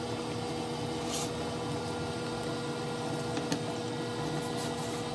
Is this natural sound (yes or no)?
yes